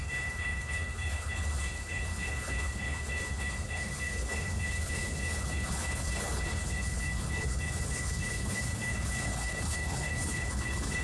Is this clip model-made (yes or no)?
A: yes